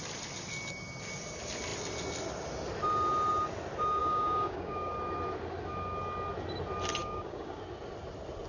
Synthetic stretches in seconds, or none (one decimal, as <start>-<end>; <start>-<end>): 4.0-4.9; 7.0-7.6